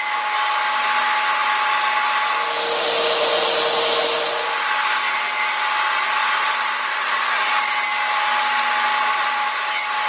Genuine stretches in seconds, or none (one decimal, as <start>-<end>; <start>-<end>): 0.0-6.2; 7.5-8.9; 9.5-10.1